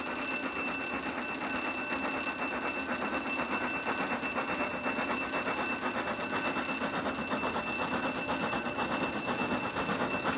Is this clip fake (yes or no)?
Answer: no